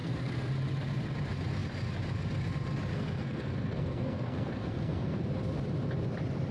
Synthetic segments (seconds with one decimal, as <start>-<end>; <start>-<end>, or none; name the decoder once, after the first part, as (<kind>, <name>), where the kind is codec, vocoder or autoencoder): 0.0-0.5 (codec, SNAC); 2.9-5.3